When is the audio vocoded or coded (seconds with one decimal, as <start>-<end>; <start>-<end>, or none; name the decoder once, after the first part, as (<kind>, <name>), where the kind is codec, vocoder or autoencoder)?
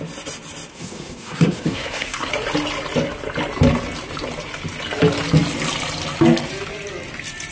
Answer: 0.7-2.3 (codec, SNAC)